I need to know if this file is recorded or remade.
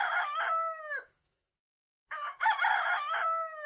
remade